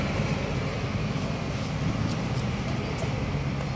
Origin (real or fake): real